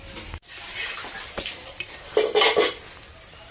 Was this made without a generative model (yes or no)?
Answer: yes